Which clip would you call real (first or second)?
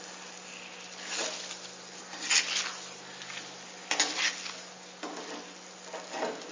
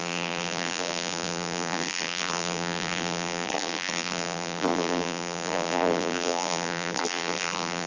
first